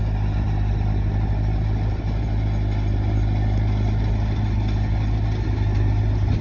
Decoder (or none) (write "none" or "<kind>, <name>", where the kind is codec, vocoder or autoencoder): none